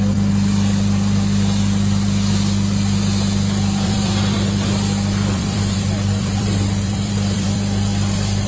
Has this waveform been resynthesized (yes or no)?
yes